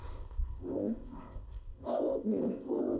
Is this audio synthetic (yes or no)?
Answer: yes